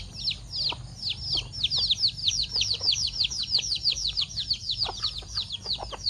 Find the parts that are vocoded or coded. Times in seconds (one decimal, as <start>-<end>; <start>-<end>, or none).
2.2-6.1